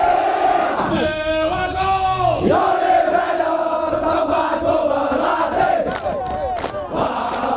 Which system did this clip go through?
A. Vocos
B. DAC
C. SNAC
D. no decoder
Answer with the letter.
D